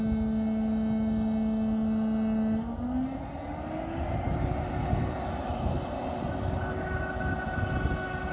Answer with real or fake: real